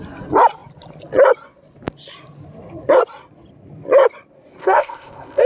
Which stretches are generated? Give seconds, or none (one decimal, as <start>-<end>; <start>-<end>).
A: 4.6-5.5